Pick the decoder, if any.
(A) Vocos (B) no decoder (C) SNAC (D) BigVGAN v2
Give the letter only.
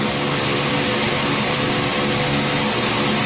B